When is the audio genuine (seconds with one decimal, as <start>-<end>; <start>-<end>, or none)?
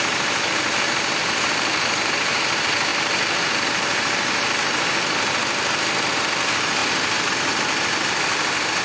0.0-1.2; 2.3-6.8; 7.3-8.8